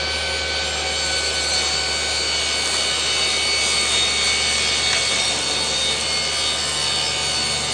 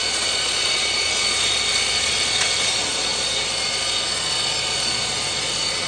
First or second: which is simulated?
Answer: second